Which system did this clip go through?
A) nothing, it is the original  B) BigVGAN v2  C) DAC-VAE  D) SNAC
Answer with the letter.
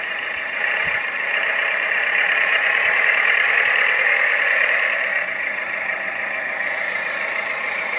B